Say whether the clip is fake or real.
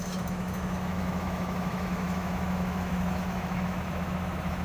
fake